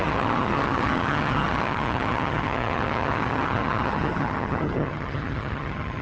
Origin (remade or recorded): remade